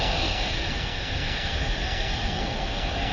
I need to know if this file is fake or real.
fake